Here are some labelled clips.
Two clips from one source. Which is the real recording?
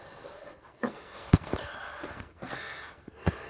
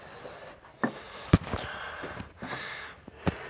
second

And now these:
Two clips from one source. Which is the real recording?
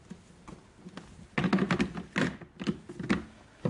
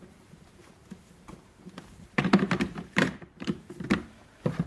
first